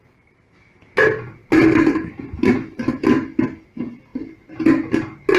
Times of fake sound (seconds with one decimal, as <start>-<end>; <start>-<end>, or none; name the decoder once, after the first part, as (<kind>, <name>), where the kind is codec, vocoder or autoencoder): none